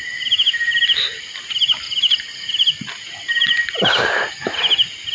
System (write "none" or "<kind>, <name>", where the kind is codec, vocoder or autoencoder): none